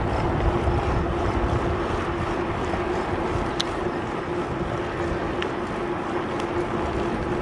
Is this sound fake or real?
real